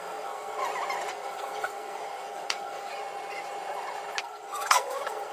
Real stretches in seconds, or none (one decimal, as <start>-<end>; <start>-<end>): 0.6-1.1; 2.9-4.2